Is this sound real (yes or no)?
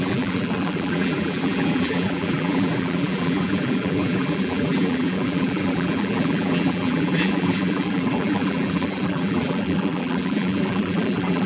no